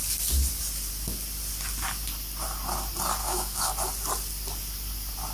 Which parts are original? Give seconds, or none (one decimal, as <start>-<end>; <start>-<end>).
0.0-3.2; 3.7-5.3